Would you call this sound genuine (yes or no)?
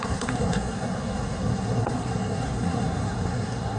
no